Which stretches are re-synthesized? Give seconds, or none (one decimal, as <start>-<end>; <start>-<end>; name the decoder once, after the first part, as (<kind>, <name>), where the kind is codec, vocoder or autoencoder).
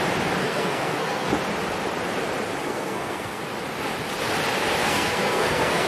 0.4-1.3 (codec, SNAC); 2.6-3.4; 4.8-5.9